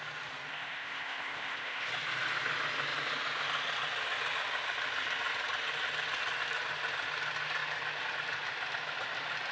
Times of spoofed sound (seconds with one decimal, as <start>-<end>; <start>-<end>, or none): 0.5-1.9